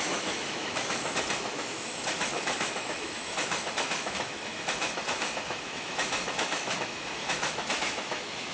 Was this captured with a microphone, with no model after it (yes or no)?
no